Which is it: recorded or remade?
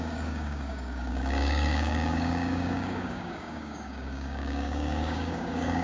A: remade